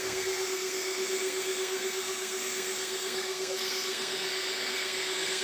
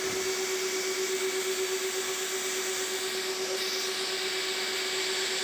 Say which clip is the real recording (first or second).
second